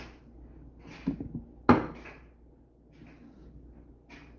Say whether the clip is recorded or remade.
recorded